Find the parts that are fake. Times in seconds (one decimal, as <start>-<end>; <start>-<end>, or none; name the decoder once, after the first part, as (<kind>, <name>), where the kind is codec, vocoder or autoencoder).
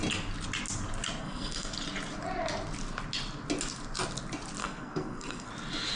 1.2-1.7 (codec, SNAC); 4.6-5.5